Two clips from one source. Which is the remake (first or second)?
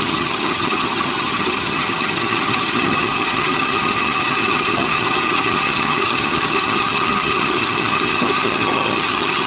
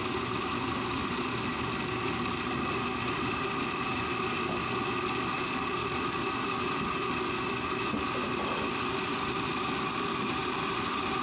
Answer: first